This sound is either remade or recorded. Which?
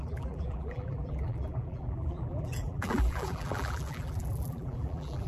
remade